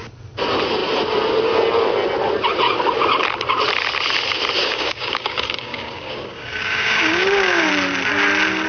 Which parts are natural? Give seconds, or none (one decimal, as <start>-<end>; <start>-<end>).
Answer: 0.0-4.6; 7.7-8.7